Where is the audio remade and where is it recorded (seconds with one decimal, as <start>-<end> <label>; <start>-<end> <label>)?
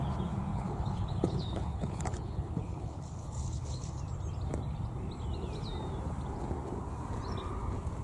0.0-0.5 recorded; 0.5-4.0 remade; 4.0-8.0 recorded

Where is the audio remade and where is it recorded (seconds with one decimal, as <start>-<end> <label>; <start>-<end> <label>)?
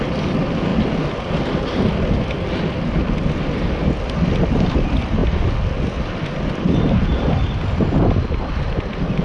0.0-9.2 recorded